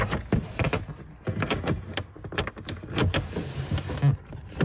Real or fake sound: real